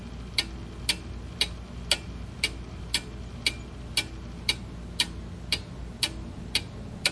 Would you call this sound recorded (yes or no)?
yes